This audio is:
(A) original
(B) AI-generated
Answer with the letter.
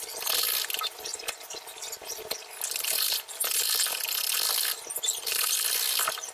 A